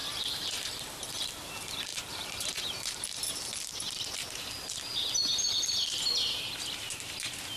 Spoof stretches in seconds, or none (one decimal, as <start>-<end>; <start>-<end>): 0.0-0.8; 1.9-2.6